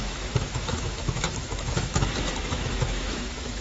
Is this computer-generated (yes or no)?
yes